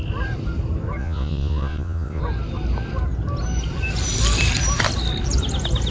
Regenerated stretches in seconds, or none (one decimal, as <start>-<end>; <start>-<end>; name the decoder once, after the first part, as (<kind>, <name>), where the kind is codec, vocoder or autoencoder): 1.0-2.2 (vocoder, Vocos)